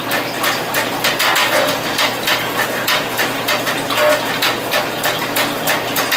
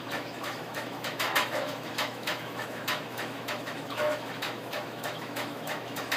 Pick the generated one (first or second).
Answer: second